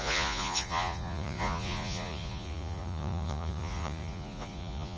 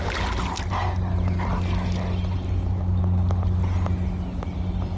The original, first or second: second